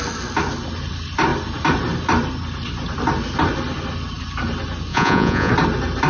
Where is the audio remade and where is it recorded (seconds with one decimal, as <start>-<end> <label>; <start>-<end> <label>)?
0.0-4.9 recorded; 4.9-5.5 remade; 5.5-6.1 recorded

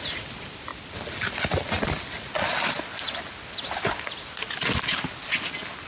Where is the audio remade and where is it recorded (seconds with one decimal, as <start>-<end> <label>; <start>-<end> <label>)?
0.0-5.9 recorded

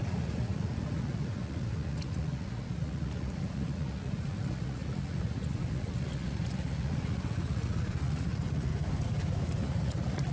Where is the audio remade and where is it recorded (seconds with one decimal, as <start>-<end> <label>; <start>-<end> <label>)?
0.0-8.7 remade; 8.7-9.6 recorded; 9.6-10.3 remade

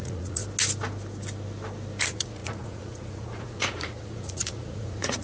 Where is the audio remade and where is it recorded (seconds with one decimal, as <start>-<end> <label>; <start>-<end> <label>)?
0.0-0.4 remade; 0.4-2.0 recorded; 2.0-5.2 remade

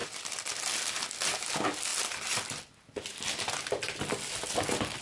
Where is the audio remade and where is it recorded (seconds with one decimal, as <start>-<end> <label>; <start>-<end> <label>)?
0.0-5.0 recorded